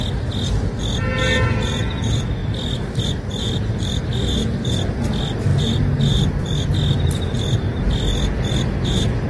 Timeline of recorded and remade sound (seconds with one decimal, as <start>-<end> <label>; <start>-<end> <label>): 0.0-2.4 recorded; 2.4-3.0 remade; 3.0-5.5 recorded; 5.5-7.8 remade; 7.8-9.3 recorded